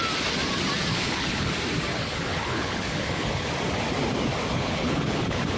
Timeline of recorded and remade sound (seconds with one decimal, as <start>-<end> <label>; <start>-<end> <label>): 0.0-0.9 recorded; 0.9-1.5 remade; 1.5-1.9 recorded; 1.9-3.5 remade; 3.5-4.5 recorded; 4.5-5.6 remade